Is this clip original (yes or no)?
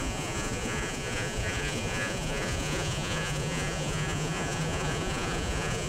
no